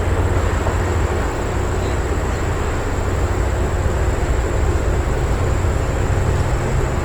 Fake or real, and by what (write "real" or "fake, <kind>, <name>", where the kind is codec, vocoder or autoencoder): real